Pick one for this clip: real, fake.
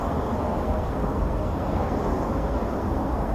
fake